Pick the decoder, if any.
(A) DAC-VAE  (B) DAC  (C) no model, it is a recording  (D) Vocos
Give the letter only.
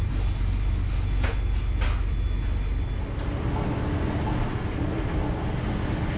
C